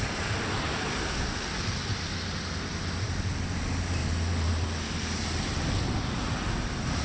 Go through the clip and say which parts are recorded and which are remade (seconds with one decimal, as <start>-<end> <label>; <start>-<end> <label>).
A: 0.0-7.0 recorded